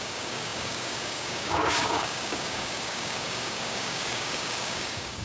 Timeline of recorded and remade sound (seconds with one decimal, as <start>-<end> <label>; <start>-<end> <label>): 0.0-5.2 remade